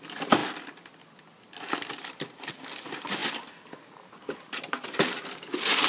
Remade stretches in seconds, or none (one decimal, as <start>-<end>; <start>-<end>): none